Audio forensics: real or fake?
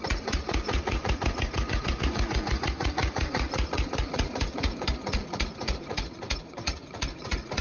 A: fake